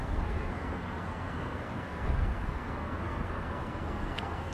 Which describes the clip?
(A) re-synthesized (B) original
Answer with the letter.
A